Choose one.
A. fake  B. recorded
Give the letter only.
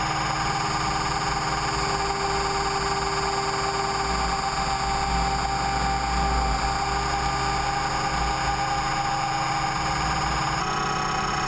B